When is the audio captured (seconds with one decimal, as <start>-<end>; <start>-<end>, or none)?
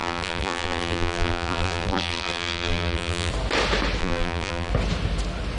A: 3.3-4.0; 4.7-5.6